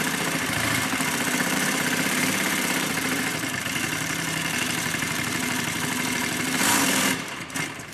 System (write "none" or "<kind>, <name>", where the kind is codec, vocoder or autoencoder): vocoder, BigVGAN v2